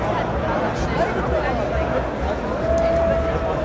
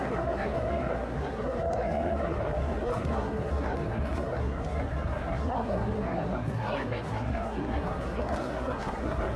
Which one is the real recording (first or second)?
first